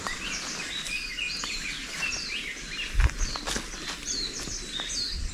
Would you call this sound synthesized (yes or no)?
no